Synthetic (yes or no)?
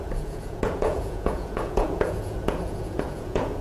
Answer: yes